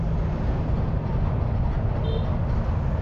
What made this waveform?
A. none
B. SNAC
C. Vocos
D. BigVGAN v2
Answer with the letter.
A